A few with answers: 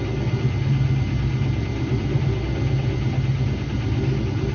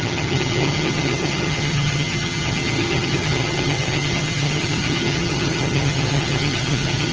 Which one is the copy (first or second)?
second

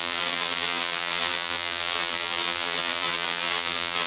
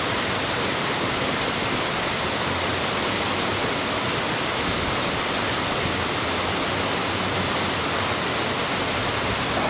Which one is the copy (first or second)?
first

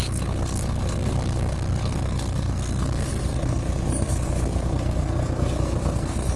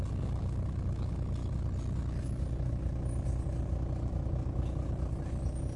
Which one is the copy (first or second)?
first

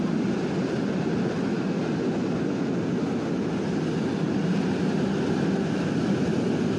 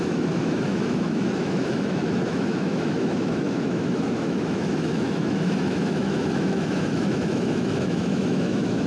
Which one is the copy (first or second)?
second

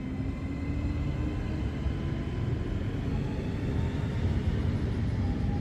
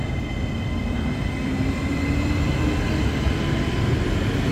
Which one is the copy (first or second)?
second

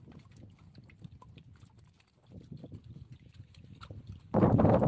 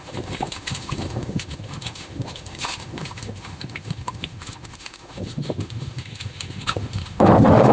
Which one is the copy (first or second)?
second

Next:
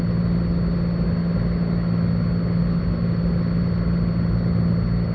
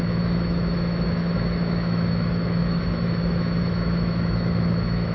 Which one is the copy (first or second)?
second